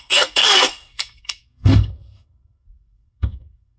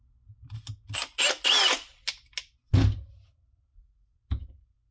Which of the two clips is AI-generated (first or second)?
first